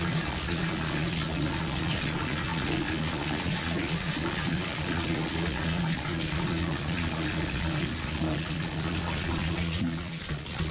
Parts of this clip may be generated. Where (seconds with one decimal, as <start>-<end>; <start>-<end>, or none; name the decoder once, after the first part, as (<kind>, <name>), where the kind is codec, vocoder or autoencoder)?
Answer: 0.0-10.7 (vocoder, Vocos)

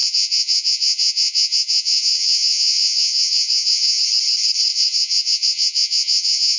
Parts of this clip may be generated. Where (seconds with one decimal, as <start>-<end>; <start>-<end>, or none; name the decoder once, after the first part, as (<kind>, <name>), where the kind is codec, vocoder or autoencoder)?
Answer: 0.0-4.0 (vocoder, Vocos); 4.7-6.6

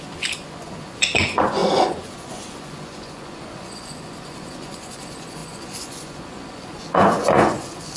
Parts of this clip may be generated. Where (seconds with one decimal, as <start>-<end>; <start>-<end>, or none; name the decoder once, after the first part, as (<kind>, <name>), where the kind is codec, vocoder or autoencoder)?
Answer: 0.0-8.0 (vocoder, Vocos)

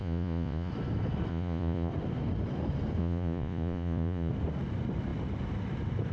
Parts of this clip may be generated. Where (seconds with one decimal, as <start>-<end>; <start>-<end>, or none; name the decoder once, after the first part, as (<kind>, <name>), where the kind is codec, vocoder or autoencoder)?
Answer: 0.0-0.7 (vocoder, Vocos); 1.3-1.9; 3.0-4.3

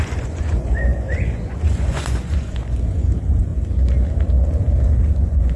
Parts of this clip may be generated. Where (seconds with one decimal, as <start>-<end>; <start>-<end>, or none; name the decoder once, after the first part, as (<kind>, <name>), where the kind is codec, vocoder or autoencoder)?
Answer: 0.0-3.5 (vocoder, Vocos); 5.1-5.6

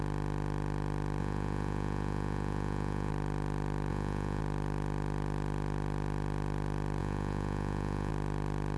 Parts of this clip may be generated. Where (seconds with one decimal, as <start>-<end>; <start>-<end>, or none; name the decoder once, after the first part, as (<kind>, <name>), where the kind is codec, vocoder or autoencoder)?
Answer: 1.2-3.1 (vocoder, Vocos); 3.9-4.4; 7.0-8.1